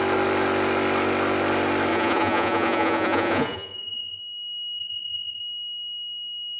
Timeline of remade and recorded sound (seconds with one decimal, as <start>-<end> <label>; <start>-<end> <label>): 0.0-1.9 recorded; 1.9-4.2 remade; 4.2-4.8 recorded; 4.8-5.4 remade; 5.4-6.6 recorded